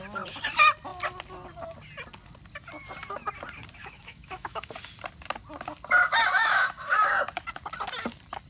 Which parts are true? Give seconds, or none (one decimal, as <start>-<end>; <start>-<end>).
0.0-3.8; 4.7-6.3; 7.1-8.5